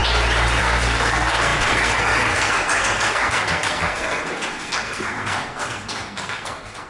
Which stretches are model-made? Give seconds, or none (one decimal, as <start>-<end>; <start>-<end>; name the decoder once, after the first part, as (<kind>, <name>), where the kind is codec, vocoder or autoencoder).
0.6-6.9 (codec, SNAC)